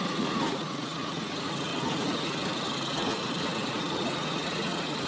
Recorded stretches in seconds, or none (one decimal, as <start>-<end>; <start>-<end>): 1.7-2.7; 3.1-3.7